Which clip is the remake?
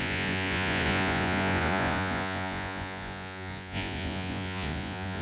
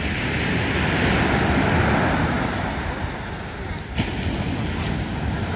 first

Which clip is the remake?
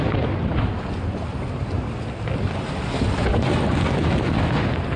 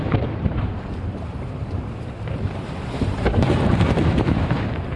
second